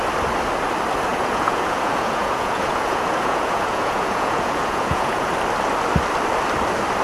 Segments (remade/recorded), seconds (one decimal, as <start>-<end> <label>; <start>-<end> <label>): 0.0-1.1 recorded; 1.1-5.3 remade; 5.3-7.0 recorded

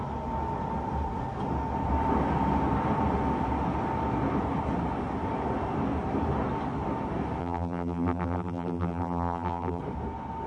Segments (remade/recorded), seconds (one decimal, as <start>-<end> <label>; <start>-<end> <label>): 0.0-7.4 recorded; 7.4-9.8 remade; 9.8-10.5 recorded

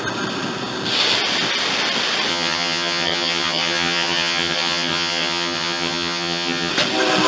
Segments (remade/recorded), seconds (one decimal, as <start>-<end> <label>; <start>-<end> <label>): 0.0-2.3 recorded; 2.3-6.7 remade; 6.7-7.3 recorded

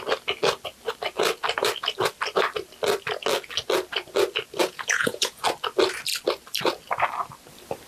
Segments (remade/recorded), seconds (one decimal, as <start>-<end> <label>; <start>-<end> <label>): 0.0-4.6 recorded; 4.6-5.4 remade; 5.4-7.9 recorded

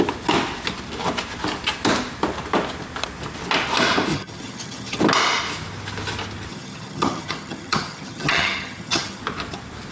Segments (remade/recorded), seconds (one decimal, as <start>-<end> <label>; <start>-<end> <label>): 0.0-4.1 recorded; 4.1-5.0 remade; 5.0-6.5 recorded; 6.5-9.2 remade; 9.2-9.9 recorded

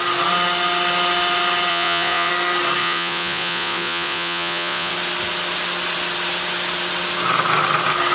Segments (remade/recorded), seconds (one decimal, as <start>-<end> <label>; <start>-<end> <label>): 0.0-1.7 recorded; 1.7-2.3 remade; 2.3-2.8 recorded; 2.8-4.9 remade; 4.9-8.1 recorded

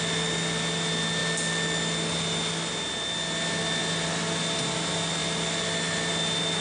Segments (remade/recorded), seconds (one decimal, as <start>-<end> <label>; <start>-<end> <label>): 0.0-6.6 recorded